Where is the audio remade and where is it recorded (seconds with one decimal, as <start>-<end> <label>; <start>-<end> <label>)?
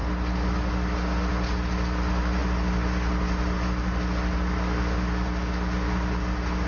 0.0-6.7 recorded